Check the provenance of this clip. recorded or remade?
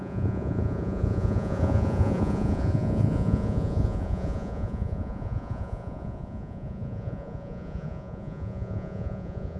remade